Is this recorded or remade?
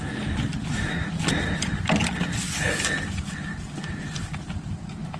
remade